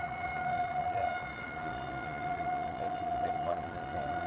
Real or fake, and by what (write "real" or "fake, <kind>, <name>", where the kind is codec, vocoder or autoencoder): fake, vocoder, Vocos